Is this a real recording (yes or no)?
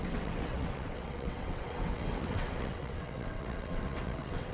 no